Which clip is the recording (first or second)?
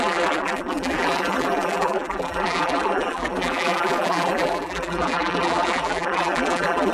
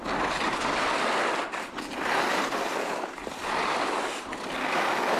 second